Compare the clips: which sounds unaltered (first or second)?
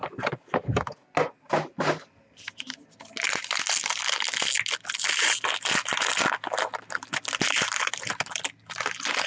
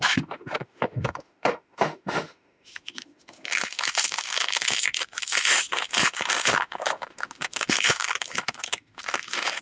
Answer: first